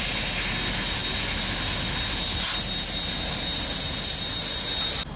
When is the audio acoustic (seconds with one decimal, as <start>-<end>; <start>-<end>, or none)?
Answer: 0.0-5.2